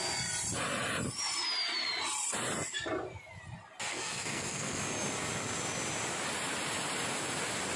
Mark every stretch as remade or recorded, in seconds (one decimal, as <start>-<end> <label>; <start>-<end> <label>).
0.0-3.9 recorded; 3.9-4.8 remade; 4.8-7.8 recorded